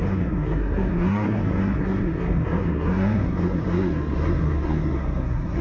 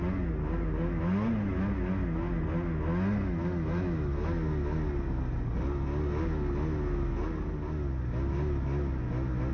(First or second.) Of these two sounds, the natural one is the second